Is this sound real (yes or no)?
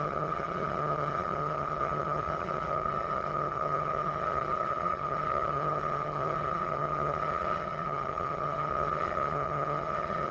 no